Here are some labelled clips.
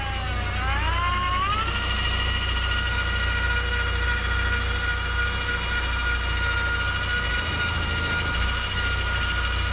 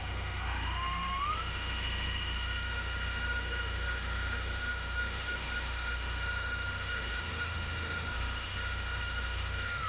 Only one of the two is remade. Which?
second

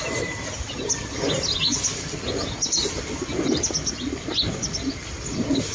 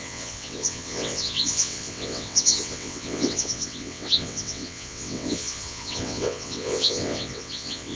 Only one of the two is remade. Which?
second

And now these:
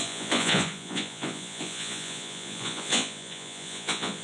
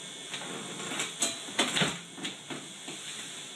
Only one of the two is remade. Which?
first